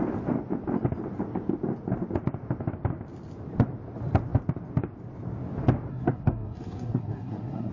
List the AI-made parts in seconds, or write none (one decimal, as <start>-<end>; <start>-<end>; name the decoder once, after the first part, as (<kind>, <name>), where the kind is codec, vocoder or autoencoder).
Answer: 5.9-7.7 (codec, SNAC)